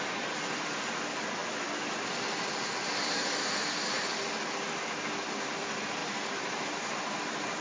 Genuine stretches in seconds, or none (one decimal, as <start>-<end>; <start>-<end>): 0.0-7.6